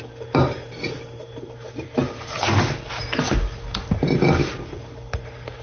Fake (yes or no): no